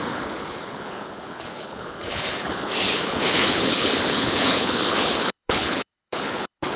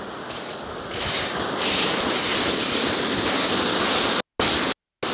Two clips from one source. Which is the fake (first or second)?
first